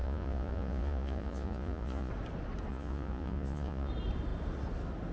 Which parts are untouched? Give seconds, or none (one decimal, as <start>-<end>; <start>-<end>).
2.1-2.7; 3.9-5.1